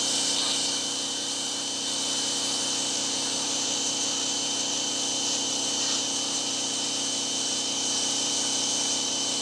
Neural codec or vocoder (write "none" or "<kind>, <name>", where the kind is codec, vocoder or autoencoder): vocoder, BigVGAN v2